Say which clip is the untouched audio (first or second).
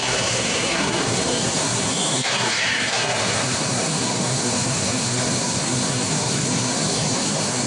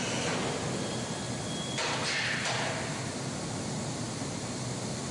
second